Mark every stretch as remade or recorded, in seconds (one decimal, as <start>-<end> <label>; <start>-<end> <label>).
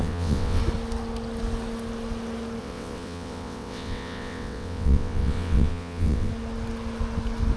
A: 0.0-0.6 remade; 0.6-2.6 recorded; 2.6-6.3 remade; 6.3-7.6 recorded